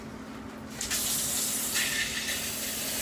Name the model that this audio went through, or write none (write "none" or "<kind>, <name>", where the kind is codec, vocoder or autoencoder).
none